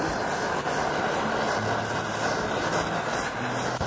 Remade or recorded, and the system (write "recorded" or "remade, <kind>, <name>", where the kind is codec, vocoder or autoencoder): recorded